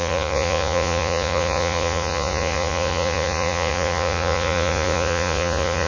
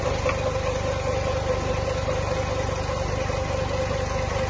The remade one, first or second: first